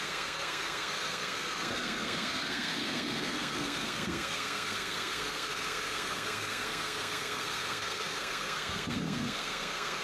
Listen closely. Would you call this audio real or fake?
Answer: fake